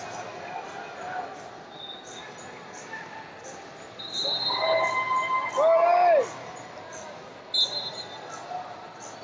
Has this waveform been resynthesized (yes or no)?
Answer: no